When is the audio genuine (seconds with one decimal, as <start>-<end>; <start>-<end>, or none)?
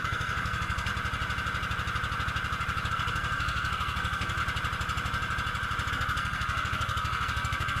0.9-2.9; 4.4-5.9